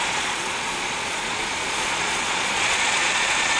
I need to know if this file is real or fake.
fake